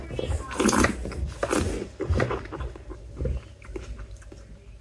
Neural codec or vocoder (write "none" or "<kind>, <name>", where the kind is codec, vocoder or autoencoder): none